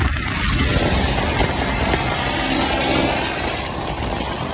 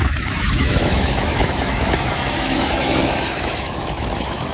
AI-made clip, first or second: second